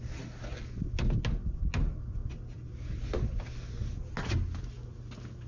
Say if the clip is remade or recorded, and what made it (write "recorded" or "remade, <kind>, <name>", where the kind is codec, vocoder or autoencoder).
recorded